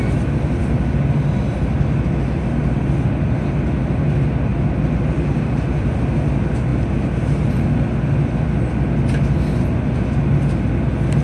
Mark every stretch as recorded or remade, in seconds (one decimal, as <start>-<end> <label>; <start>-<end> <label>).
0.0-11.2 recorded

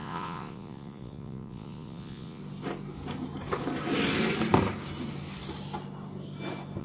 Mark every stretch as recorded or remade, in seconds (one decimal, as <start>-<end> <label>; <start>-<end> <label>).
0.0-2.4 remade; 2.4-6.8 recorded